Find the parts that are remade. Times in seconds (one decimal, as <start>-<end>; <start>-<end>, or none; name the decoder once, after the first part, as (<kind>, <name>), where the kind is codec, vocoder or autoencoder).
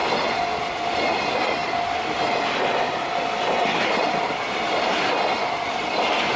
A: none